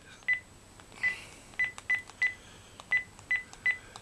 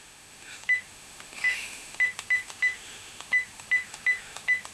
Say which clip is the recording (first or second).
first